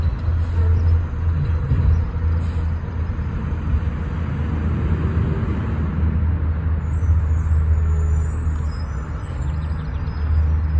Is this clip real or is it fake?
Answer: real